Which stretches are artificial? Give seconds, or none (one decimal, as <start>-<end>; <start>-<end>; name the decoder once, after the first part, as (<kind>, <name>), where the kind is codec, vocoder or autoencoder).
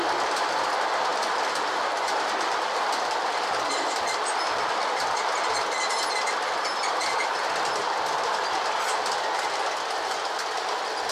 1.1-5.1 (vocoder, BigVGAN v2)